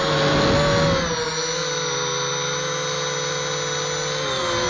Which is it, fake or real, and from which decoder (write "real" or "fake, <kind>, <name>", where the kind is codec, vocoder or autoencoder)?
real